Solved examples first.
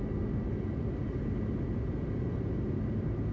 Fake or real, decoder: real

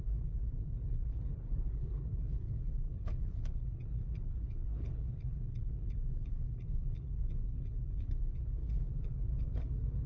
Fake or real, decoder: fake, codec, HILCodec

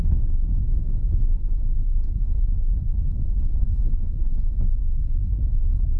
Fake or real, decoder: fake, codec, HILCodec